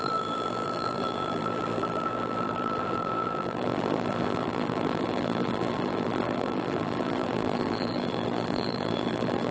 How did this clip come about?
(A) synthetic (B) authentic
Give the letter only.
A